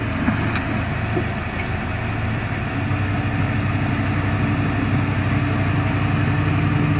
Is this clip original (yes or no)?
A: yes